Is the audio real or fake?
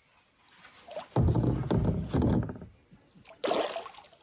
real